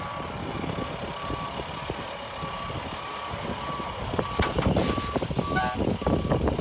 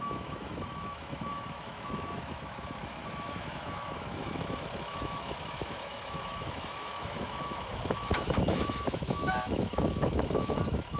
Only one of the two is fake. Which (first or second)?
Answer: second